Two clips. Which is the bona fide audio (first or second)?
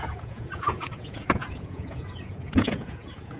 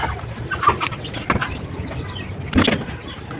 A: second